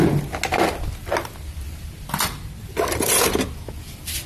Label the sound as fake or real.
real